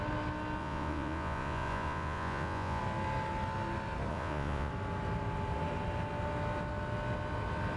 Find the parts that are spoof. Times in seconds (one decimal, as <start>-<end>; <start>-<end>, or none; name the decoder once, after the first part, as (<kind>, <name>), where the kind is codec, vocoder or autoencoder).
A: 0.6-2.8 (vocoder, Vocos); 4.1-4.7